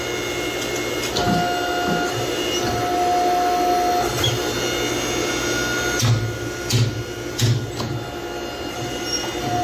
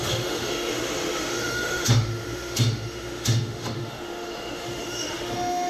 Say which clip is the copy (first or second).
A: second